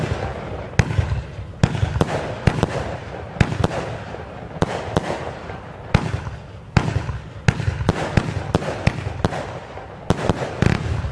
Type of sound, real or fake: real